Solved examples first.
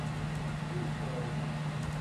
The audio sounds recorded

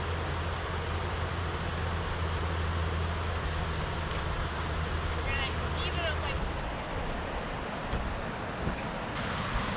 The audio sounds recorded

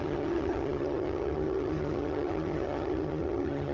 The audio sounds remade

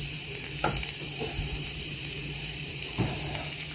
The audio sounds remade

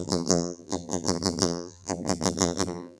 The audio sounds remade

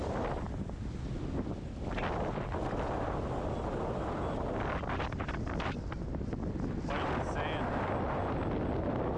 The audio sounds recorded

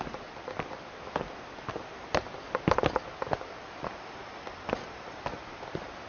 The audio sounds recorded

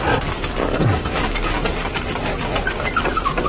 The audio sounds remade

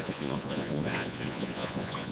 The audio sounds remade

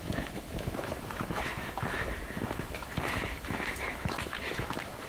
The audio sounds remade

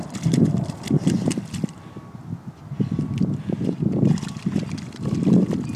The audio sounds recorded